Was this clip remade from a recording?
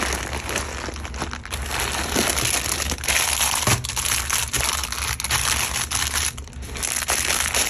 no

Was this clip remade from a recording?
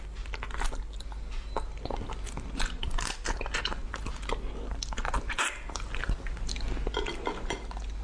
no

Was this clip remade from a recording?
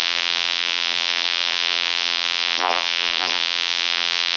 yes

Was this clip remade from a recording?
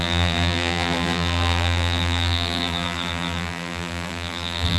yes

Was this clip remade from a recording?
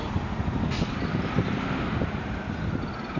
no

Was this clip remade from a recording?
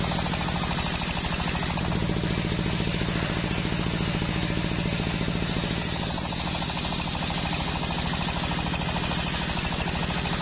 no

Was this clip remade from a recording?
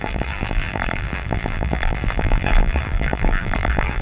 yes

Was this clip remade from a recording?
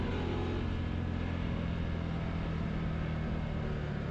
no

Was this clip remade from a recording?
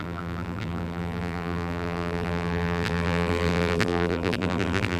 yes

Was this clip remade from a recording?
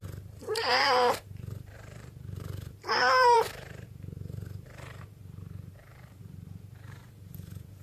yes